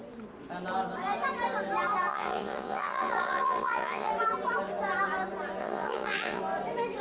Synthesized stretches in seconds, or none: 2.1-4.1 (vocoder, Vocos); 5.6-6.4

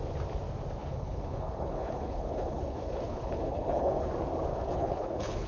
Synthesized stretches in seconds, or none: 0.8-4.1 (codec, HILCodec); 4.5-5.5

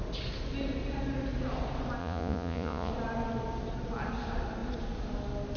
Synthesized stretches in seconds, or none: 2.0-2.9 (vocoder, Vocos)

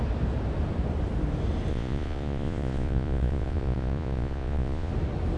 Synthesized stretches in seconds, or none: 1.7-4.9 (vocoder, Vocos)

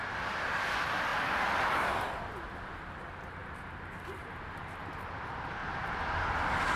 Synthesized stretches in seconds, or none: 1.1-1.9 (vocoder, BigVGAN v2); 3.4-5.1; 5.6-6.3